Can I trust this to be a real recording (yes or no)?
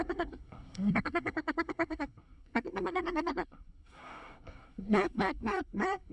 no